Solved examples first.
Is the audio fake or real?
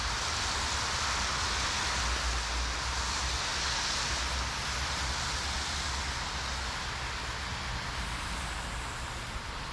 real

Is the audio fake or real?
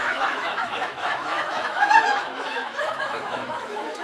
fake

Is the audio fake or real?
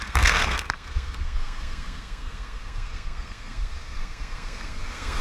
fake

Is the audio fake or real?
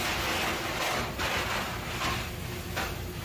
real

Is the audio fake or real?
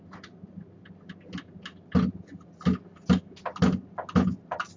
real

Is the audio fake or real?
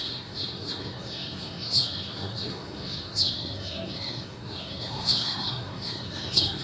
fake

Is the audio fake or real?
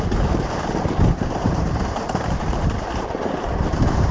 real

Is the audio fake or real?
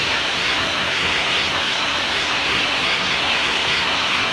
fake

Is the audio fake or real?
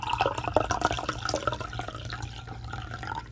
real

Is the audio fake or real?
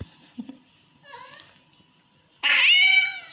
real